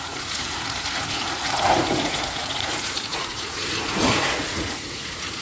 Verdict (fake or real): fake